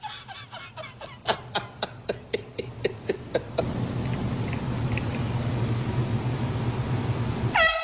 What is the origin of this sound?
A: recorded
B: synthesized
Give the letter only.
A